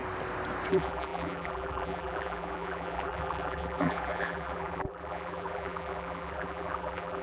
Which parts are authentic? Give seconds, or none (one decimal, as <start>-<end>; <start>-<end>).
0.0-0.7